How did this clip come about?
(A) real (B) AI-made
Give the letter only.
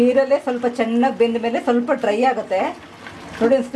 A